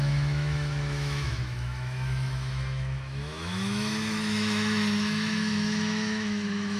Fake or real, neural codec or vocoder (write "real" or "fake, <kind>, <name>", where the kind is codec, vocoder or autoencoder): fake, autoencoder, DAC-VAE